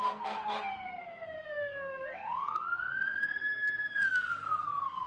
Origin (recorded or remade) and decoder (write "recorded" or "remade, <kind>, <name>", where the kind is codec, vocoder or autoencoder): remade, codec, SNAC